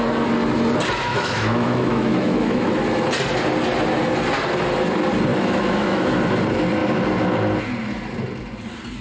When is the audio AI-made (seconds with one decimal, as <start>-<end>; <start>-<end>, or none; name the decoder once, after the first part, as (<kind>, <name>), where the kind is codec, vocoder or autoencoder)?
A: 1.1-2.8 (autoencoder, DAC-VAE); 5.3-6.2